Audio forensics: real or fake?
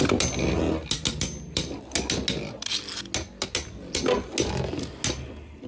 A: real